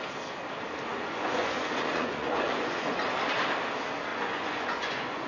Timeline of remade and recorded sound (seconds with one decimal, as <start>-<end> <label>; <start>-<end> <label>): 0.0-0.9 recorded; 0.9-3.0 remade; 3.0-4.1 recorded; 4.1-5.3 remade